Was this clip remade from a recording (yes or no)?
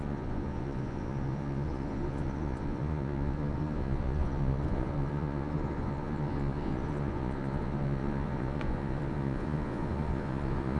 yes